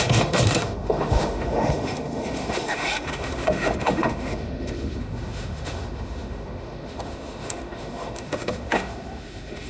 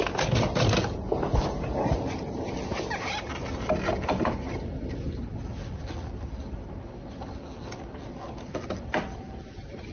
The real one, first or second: second